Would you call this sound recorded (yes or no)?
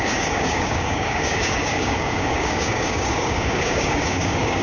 no